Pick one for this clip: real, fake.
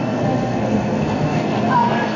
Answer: fake